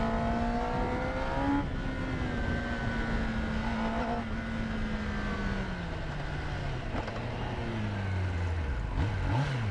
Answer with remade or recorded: recorded